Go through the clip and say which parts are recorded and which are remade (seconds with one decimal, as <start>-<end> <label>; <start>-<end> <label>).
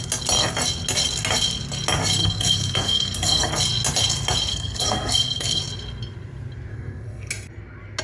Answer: 0.0-2.2 recorded; 2.2-3.5 remade; 3.5-4.5 recorded; 4.5-5.6 remade; 5.6-6.7 recorded; 6.7-7.3 remade; 7.3-8.0 recorded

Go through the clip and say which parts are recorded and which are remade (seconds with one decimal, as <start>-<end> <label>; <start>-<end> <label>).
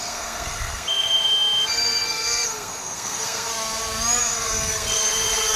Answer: 0.0-3.5 remade; 3.5-4.2 recorded; 4.2-5.6 remade